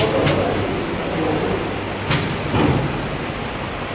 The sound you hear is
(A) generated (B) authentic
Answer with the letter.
B